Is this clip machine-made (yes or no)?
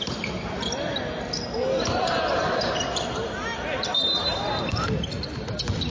yes